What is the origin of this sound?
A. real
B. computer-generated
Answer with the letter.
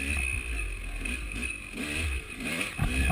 A